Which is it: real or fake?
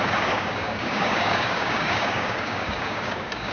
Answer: fake